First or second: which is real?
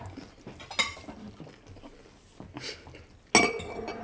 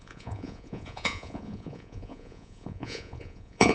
first